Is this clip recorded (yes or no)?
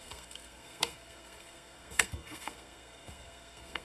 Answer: no